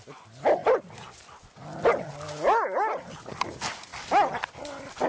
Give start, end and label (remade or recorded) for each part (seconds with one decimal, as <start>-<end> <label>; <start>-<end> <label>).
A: 0.0-5.1 recorded